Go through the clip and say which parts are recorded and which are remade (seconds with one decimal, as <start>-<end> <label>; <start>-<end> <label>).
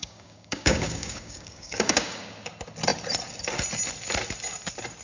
0.0-2.5 remade; 2.5-5.0 recorded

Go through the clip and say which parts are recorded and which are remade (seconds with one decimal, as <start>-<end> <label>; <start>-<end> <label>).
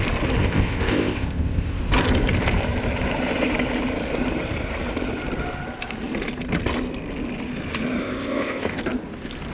0.0-0.4 recorded; 0.4-1.8 remade; 1.8-8.0 recorded; 8.0-8.8 remade; 8.8-9.5 recorded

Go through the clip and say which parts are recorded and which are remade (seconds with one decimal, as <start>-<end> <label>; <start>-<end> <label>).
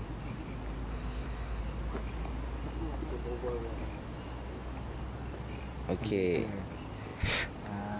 0.0-0.9 recorded; 0.9-1.6 remade; 1.6-8.0 recorded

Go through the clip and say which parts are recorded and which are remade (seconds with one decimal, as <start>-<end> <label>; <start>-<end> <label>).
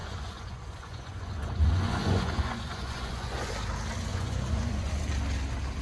0.0-3.5 remade; 3.5-4.1 recorded; 4.1-4.9 remade; 4.9-5.8 recorded